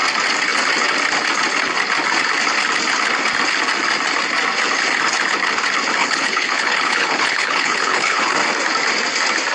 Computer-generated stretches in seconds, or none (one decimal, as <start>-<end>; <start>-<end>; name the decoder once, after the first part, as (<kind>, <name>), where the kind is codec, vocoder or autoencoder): 6.0-8.3 (codec, HILCodec)